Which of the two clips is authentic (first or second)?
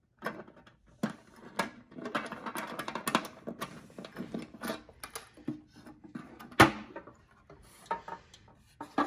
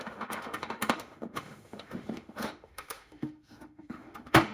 first